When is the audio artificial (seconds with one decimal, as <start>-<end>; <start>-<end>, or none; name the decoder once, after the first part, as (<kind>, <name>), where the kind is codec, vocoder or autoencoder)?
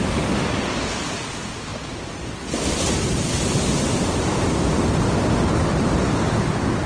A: none